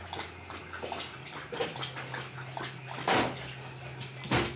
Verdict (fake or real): real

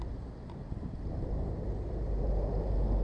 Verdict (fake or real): real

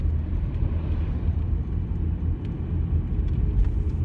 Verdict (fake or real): real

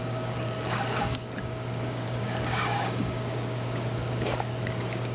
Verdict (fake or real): fake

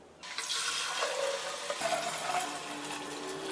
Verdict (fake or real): real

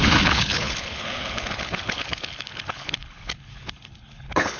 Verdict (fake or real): fake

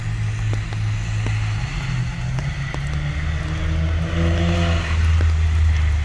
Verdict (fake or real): real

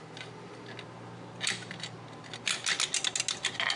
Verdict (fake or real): real